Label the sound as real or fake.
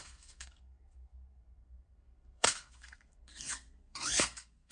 fake